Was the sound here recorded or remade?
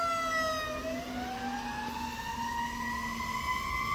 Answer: recorded